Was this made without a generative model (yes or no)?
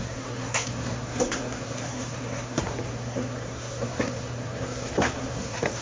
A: no